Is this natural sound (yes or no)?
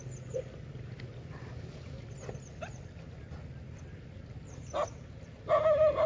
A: yes